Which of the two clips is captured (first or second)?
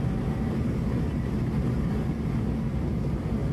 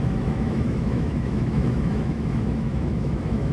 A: first